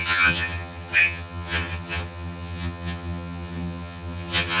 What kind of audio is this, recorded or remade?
remade